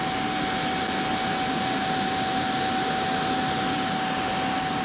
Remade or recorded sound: recorded